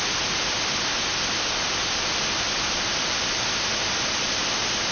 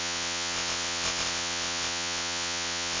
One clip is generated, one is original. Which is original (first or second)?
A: first